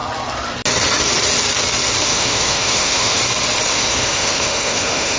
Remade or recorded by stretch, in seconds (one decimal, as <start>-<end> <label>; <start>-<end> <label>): 0.0-2.1 recorded; 2.1-3.2 remade; 3.2-3.7 recorded; 3.7-5.2 remade